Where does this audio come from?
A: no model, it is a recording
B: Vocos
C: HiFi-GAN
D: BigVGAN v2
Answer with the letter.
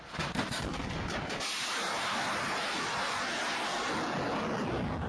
A